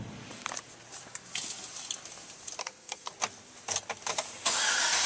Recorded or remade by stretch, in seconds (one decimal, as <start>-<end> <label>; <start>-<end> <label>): 0.0-2.6 recorded; 2.6-3.1 remade; 3.1-5.1 recorded